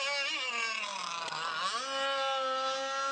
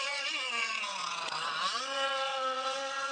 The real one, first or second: first